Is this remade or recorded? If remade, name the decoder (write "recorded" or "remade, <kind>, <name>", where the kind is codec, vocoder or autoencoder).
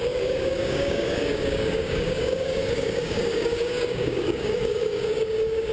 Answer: remade, codec, DAC